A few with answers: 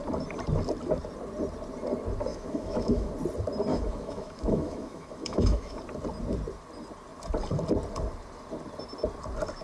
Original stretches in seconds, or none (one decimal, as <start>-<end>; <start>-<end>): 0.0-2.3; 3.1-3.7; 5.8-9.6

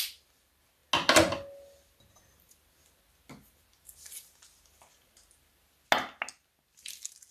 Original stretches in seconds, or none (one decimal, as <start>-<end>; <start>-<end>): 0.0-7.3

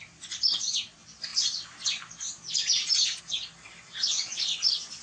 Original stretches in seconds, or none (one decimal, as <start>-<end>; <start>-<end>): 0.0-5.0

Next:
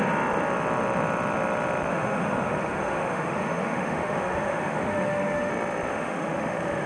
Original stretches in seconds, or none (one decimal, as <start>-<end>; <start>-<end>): 0.0-1.9; 5.5-5.9

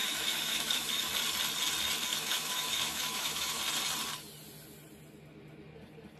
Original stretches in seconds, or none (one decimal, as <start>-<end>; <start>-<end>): 1.1-2.1; 3.6-6.2

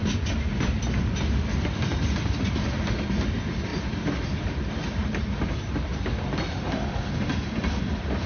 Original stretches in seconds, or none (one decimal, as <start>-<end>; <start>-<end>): 0.0-8.3